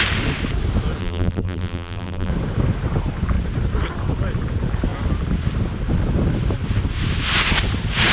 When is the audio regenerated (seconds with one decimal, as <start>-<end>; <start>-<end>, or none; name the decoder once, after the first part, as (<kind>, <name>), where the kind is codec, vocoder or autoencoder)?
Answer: 1.0-2.3 (vocoder, BigVGAN v2)